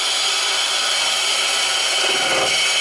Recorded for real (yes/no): yes